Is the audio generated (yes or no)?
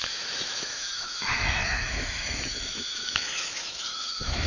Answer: yes